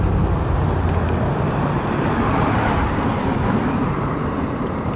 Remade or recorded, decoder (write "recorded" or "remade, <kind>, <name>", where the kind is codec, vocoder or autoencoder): recorded